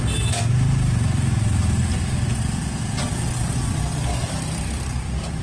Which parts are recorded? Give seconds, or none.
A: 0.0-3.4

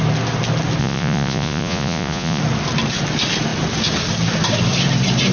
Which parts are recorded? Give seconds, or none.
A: 0.0-0.8; 2.4-5.3

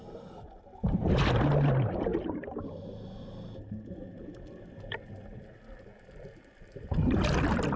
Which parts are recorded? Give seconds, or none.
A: 0.0-7.8

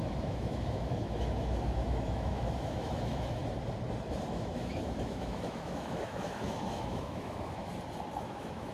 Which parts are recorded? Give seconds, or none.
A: 3.4-4.3; 7.7-8.2

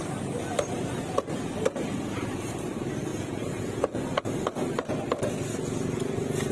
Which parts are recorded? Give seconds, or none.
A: 0.0-3.1; 4.2-6.5

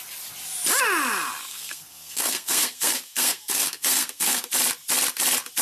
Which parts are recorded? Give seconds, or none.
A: 0.0-1.5; 4.5-5.6